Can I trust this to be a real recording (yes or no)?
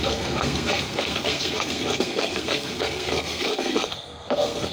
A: no